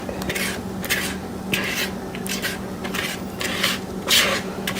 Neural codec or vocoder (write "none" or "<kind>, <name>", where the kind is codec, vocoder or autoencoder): none